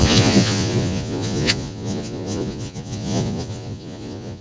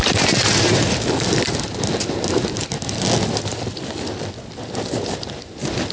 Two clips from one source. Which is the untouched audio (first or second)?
second